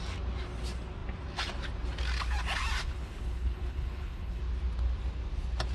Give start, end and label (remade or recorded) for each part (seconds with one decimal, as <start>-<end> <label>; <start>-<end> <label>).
0.0-2.8 recorded; 2.8-4.4 remade; 4.4-5.7 recorded

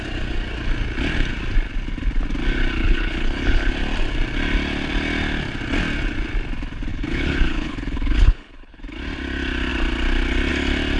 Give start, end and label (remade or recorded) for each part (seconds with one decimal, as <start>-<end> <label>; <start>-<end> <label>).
0.0-2.8 recorded; 2.8-3.7 remade; 3.7-6.9 recorded; 6.9-8.8 remade; 8.8-11.0 recorded

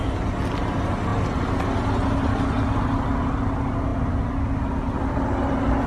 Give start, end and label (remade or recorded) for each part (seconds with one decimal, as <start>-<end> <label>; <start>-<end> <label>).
0.0-5.9 recorded